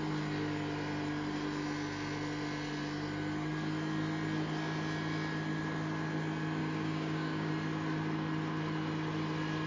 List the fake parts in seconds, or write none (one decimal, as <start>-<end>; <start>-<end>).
6.6-7.5